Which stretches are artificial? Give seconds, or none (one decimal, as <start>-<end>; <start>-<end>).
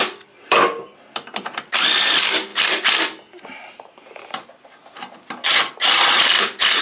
none